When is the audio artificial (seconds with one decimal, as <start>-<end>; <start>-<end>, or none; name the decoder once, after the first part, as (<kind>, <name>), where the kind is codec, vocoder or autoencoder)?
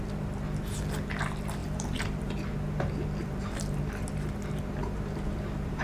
1.6-2.3 (vocoder, BigVGAN v2); 3.2-3.8; 4.8-5.8